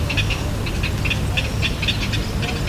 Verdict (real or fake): real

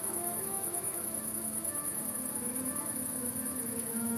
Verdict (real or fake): fake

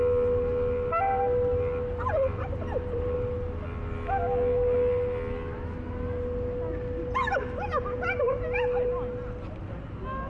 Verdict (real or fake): real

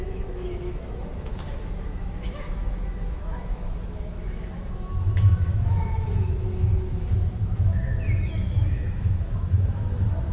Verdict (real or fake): fake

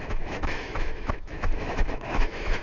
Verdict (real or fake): fake